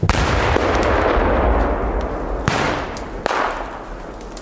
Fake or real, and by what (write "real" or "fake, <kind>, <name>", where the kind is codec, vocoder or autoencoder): real